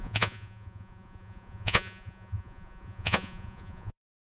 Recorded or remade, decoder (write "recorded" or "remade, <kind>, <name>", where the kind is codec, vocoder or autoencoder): remade, vocoder, Vocos